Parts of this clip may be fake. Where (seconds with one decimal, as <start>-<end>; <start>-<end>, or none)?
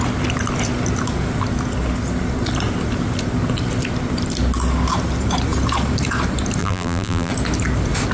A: 6.6-7.3